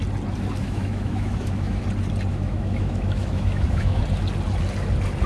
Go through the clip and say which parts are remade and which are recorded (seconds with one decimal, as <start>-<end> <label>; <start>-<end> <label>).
0.0-0.6 recorded; 0.6-1.8 remade; 1.8-2.3 recorded; 2.3-4.0 remade; 4.0-5.3 recorded